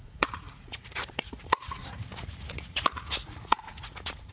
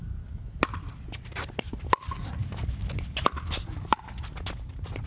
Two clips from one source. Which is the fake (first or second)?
first